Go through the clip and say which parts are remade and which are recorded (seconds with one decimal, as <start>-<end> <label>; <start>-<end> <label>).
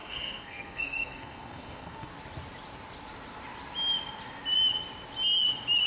0.0-2.1 remade; 2.1-5.9 recorded